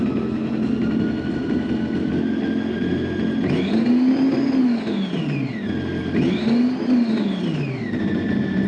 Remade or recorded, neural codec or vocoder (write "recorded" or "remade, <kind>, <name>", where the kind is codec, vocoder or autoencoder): recorded